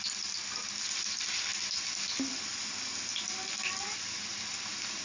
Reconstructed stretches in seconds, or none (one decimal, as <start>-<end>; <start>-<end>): none

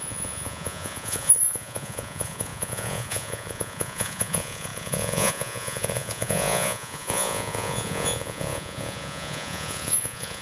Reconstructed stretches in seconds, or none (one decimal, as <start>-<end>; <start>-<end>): 0.0-10.4

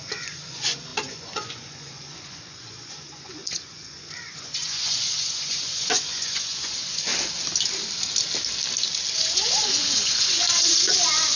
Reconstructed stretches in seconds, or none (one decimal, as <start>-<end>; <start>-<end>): 0.0-7.1; 9.1-11.4

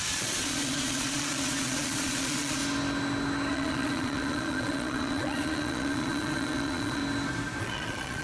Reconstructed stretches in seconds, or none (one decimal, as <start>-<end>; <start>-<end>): 0.0-2.6; 3.5-7.0; 7.6-8.2

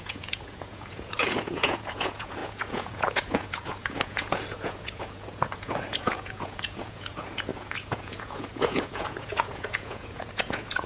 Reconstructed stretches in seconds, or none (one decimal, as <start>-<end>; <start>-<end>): 0.0-10.9